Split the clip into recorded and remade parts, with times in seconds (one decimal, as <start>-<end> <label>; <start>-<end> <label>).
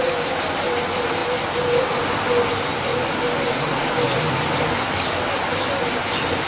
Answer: 0.0-6.5 recorded